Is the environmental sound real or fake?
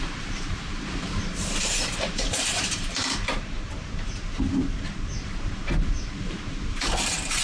fake